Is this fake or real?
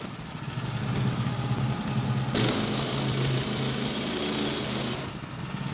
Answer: real